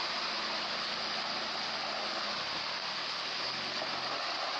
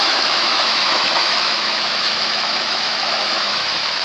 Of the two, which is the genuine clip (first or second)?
first